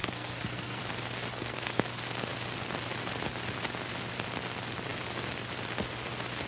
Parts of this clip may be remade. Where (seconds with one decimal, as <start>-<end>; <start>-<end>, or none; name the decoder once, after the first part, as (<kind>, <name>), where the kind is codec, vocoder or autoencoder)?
0.0-0.8 (codec, SNAC); 1.3-1.8